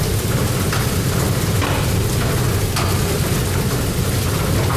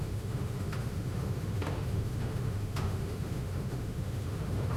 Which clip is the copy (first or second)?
second